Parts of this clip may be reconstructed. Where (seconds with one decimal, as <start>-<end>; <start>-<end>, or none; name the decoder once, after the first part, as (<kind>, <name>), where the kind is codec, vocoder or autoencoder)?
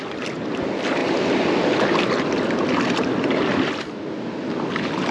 1.0-4.1 (vocoder, BigVGAN v2)